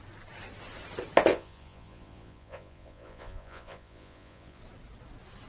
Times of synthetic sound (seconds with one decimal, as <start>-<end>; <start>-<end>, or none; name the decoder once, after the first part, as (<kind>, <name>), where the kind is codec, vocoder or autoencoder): 1.3-4.6 (vocoder, Vocos)